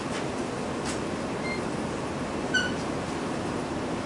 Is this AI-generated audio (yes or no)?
no